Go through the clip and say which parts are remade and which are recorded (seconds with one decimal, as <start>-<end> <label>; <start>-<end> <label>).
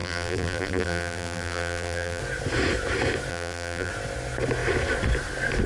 0.0-2.2 remade; 2.2-3.3 recorded; 3.3-3.9 remade; 3.9-5.7 recorded